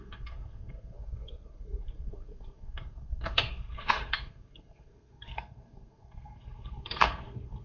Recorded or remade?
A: remade